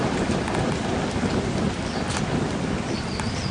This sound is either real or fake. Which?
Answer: real